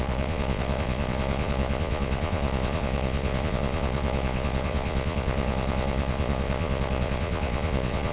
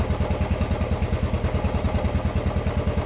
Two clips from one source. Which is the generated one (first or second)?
first